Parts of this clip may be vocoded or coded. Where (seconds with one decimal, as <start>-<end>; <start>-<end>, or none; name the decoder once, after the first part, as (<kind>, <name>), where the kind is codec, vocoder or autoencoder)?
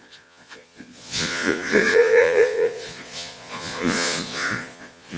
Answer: 0.0-5.2 (vocoder, Vocos)